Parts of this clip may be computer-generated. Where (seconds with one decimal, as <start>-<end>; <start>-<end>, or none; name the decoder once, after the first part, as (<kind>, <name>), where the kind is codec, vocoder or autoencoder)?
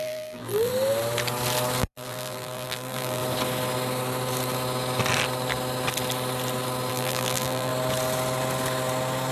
0.0-0.7 (vocoder, BigVGAN v2); 1.8-3.2; 6.9-7.7